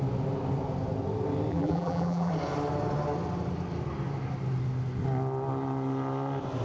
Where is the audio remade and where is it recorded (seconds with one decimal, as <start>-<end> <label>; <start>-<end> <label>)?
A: 0.0-1.5 recorded; 1.5-2.3 remade; 2.3-6.6 recorded